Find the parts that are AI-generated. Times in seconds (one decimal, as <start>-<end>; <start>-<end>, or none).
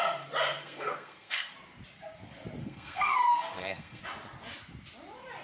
0.6-1.5; 2.6-4.0